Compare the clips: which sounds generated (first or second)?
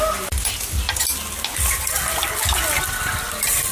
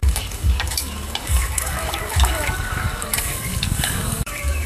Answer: second